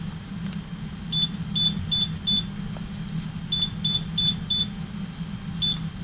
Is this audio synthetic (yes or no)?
no